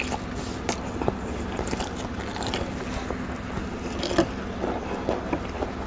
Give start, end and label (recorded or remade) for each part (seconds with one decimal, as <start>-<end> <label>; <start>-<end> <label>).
0.0-5.9 recorded